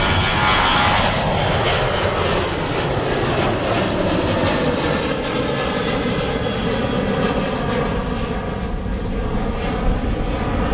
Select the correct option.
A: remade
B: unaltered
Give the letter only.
B